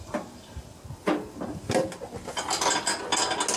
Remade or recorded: recorded